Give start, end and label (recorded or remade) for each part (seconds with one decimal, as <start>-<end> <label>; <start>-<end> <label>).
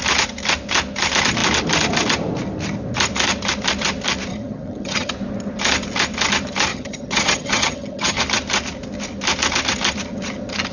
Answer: 0.0-4.3 recorded; 4.3-5.1 remade; 5.1-6.7 recorded; 6.7-8.2 remade; 8.2-10.7 recorded